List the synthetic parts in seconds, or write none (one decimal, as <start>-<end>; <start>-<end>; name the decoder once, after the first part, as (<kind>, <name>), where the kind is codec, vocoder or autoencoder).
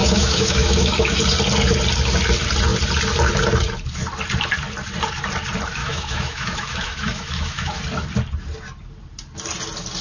0.0-1.2 (autoencoder, DAC-VAE); 5.8-7.8